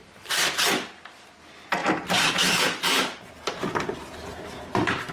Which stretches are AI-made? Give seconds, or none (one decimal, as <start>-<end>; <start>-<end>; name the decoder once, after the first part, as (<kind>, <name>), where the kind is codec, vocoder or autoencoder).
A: 1.8-5.1 (vocoder, BigVGAN v2)